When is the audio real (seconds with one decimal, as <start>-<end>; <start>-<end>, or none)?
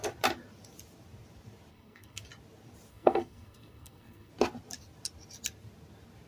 0.0-1.7; 2.2-2.9; 4.3-6.3